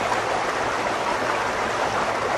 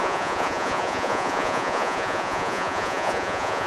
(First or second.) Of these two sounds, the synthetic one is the second